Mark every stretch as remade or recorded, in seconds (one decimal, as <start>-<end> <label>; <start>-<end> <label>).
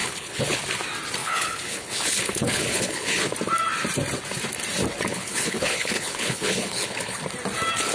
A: 0.0-0.6 remade; 0.6-1.2 recorded; 1.2-3.2 remade; 3.2-5.1 recorded; 5.1-7.2 remade; 7.2-7.9 recorded